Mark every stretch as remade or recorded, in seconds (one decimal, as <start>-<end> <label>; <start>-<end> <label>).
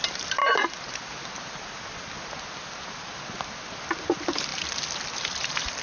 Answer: 0.0-0.4 remade; 0.4-3.9 recorded; 3.9-4.5 remade; 4.5-5.2 recorded; 5.2-5.8 remade